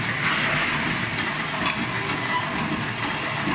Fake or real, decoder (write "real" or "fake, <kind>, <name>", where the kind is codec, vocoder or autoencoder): real